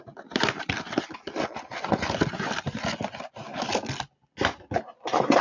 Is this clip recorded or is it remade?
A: recorded